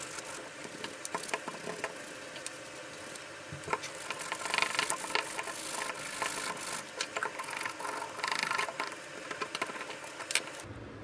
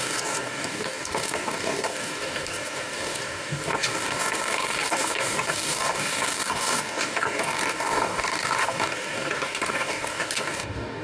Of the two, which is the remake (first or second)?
second